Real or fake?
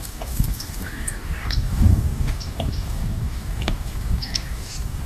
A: fake